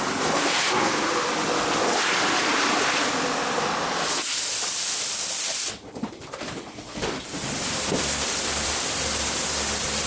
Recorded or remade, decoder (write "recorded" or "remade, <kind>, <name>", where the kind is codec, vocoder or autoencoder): remade, vocoder, BigVGAN v2